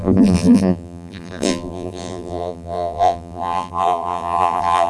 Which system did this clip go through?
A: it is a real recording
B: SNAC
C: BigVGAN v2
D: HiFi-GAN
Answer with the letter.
C